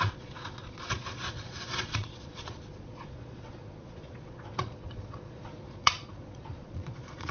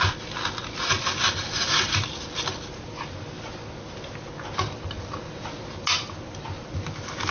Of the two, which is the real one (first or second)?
second